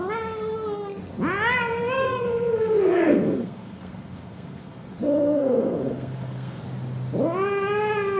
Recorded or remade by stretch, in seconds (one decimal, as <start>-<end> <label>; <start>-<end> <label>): 0.0-2.0 recorded; 2.0-6.6 remade; 6.6-8.2 recorded

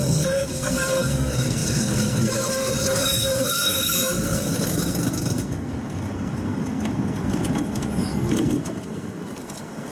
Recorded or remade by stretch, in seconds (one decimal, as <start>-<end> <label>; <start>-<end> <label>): 0.0-9.9 remade

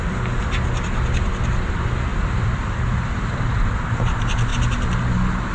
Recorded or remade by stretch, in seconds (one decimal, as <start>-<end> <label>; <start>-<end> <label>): 0.0-2.1 recorded; 2.1-3.8 remade; 3.8-5.5 recorded

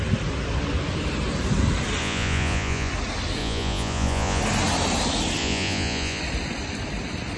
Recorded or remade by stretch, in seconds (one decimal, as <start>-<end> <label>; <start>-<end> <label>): 0.0-2.0 recorded; 2.0-2.9 remade; 2.9-3.4 recorded; 3.4-4.4 remade; 4.4-5.4 recorded; 5.4-6.2 remade; 6.2-7.4 recorded

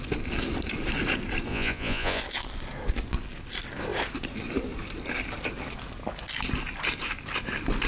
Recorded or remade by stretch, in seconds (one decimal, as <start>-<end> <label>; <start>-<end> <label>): 0.0-1.5 recorded; 1.5-2.2 remade; 2.2-7.9 recorded

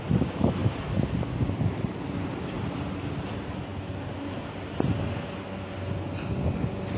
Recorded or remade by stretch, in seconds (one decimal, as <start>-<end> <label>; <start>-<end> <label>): 0.0-7.0 recorded

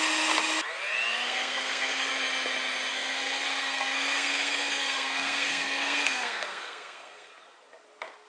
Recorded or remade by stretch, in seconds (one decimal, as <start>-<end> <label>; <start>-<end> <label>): 0.0-1.1 recorded; 1.1-2.1 remade; 2.1-2.9 recorded; 2.9-7.3 remade; 7.3-8.3 recorded